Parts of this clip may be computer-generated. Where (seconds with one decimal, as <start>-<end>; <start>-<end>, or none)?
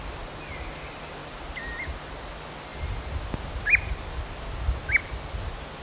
none